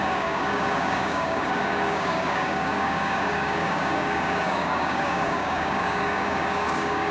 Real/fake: fake